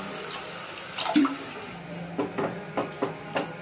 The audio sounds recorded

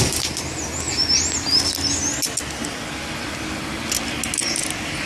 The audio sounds recorded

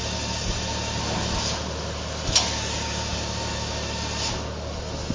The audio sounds recorded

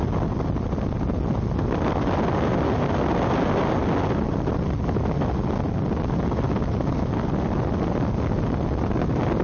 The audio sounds recorded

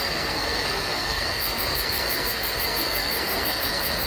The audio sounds remade